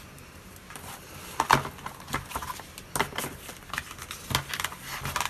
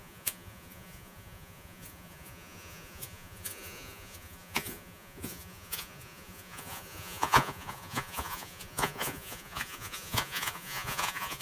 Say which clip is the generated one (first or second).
second